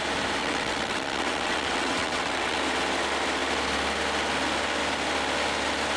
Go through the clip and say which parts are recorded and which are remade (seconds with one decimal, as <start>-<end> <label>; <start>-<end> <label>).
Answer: 0.0-0.4 recorded; 0.4-2.6 remade; 2.6-6.0 recorded